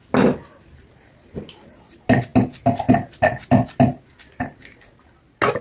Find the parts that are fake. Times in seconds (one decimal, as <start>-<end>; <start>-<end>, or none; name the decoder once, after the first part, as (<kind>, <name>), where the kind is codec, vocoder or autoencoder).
none